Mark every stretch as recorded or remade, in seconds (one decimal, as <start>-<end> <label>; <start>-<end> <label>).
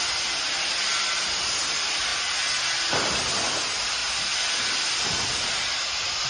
0.0-6.3 recorded